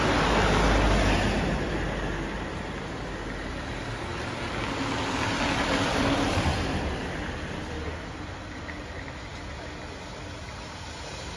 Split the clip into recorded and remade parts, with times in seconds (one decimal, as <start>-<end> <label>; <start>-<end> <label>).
0.0-11.4 recorded